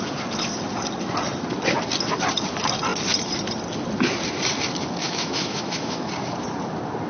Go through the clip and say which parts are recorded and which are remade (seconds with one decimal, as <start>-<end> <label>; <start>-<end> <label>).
0.0-5.0 recorded; 5.0-6.1 remade; 6.1-7.1 recorded